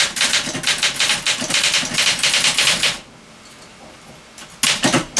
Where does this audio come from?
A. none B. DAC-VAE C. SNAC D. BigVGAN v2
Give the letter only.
A